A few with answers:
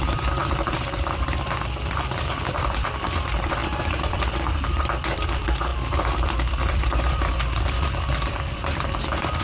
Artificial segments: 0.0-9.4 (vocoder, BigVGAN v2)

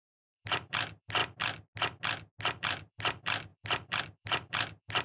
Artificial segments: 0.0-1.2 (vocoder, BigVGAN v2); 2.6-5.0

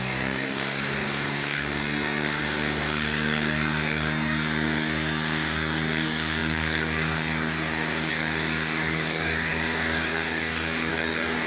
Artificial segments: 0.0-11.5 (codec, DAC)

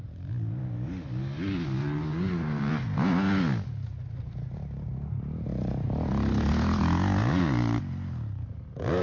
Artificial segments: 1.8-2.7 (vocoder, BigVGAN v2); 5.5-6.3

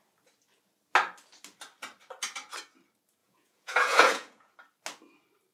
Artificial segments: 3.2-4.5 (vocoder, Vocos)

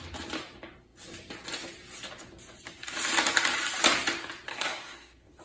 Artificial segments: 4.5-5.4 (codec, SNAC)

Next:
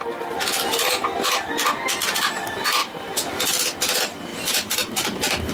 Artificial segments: 2.8-3.4 (vocoder, BigVGAN v2); 4.3-5.5

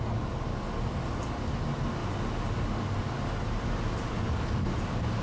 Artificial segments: none